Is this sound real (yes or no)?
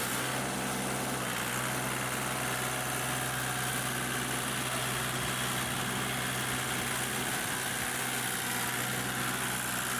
yes